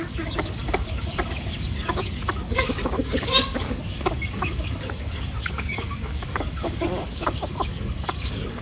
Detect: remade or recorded remade